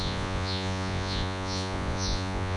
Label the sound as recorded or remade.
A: remade